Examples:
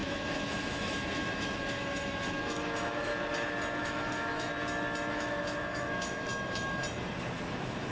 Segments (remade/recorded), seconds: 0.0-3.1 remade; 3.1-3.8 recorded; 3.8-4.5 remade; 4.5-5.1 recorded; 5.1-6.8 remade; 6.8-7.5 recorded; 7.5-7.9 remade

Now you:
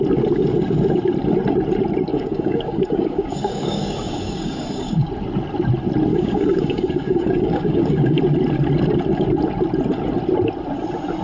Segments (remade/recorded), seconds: 0.0-2.1 recorded; 2.1-5.1 remade; 5.1-6.1 recorded; 6.1-8.2 remade; 8.2-11.2 recorded

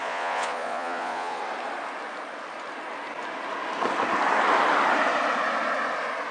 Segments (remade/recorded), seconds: 0.0-1.4 remade; 1.4-6.3 recorded